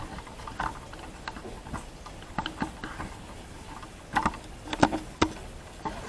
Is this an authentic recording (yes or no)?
yes